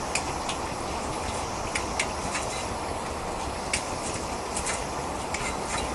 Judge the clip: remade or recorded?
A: recorded